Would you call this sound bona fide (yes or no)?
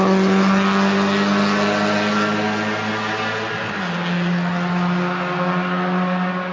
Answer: yes